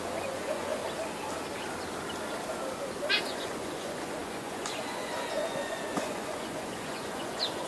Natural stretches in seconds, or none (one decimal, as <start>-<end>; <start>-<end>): 0.8-3.2